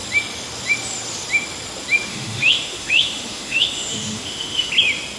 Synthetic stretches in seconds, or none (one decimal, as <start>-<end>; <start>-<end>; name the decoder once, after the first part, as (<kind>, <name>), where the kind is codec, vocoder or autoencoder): 2.1-4.7 (autoencoder, DAC-VAE)